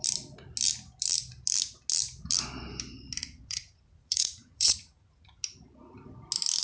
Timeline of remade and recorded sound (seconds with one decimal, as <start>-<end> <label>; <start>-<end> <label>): 0.0-3.2 recorded; 3.2-5.4 remade; 5.4-6.6 recorded

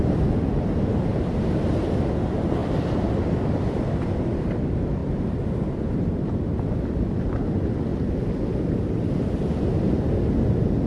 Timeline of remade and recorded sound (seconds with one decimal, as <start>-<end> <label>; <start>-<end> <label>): 0.0-10.9 recorded

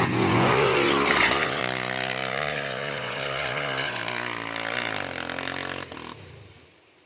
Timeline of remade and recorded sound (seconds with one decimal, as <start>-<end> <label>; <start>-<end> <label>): 0.0-1.6 remade; 1.6-2.5 recorded; 2.5-4.0 remade; 4.0-7.1 recorded

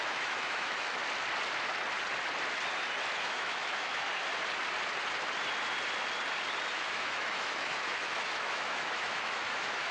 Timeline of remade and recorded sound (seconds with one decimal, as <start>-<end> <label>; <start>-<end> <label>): 0.0-1.0 remade; 1.0-3.2 recorded; 3.2-4.1 remade; 4.1-6.7 recorded; 6.7-9.9 remade

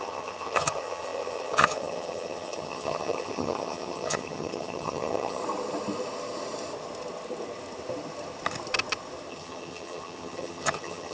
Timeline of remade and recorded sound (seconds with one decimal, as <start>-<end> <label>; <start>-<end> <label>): 0.0-5.4 remade; 5.4-9.3 recorded; 9.3-11.1 remade

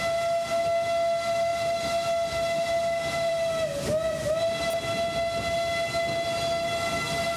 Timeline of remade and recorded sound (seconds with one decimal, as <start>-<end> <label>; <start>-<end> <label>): 0.0-7.4 recorded